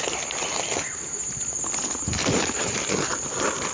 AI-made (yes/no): no